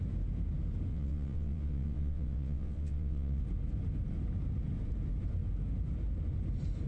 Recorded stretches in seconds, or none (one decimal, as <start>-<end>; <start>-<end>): 0.0-0.9; 3.4-6.9